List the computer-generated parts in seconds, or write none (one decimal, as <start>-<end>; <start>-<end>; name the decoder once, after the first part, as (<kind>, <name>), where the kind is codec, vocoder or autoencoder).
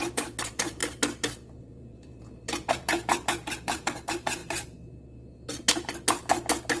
0.0-0.8 (vocoder, Vocos); 1.3-4.4